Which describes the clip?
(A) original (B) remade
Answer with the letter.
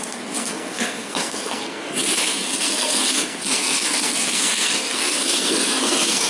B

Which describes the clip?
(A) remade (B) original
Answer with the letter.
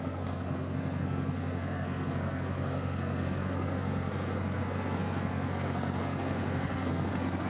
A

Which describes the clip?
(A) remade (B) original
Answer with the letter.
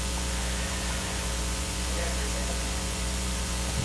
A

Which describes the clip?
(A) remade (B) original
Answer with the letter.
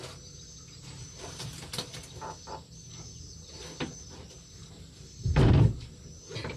B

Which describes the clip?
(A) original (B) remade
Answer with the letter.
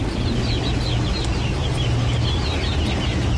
A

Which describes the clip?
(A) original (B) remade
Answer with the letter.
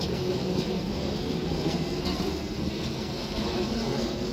B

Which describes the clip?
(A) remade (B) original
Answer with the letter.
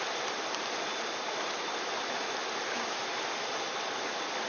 B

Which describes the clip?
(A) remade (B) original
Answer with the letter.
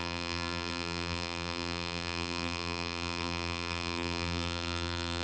A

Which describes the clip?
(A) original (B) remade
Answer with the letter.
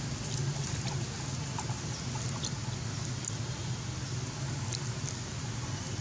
A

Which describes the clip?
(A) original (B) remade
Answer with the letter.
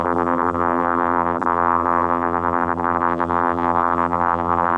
B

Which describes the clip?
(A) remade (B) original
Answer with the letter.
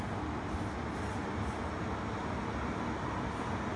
B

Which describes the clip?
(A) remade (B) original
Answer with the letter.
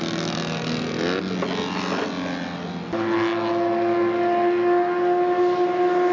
B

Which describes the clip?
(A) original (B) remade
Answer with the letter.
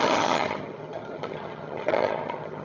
B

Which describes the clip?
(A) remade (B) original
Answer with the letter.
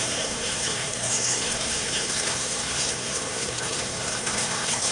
A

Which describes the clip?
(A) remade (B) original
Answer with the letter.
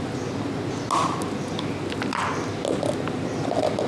B